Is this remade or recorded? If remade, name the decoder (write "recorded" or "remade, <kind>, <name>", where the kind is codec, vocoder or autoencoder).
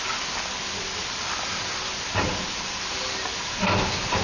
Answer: recorded